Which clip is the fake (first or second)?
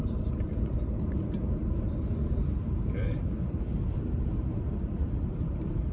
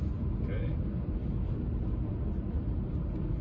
first